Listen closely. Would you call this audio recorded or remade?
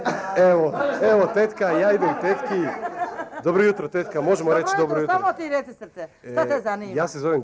recorded